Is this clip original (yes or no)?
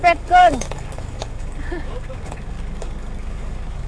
no